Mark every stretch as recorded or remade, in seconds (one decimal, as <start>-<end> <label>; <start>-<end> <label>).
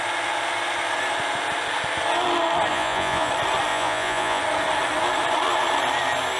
0.0-2.7 recorded; 2.7-3.3 remade; 3.3-3.7 recorded; 3.7-4.4 remade; 4.4-6.4 recorded